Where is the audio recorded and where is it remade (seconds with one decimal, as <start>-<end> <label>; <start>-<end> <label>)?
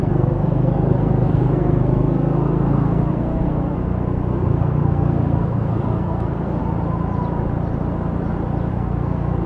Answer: 0.0-6.6 remade; 6.6-8.7 recorded; 8.7-9.5 remade